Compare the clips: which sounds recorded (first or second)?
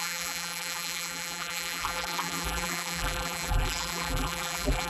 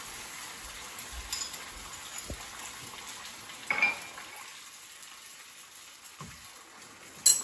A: second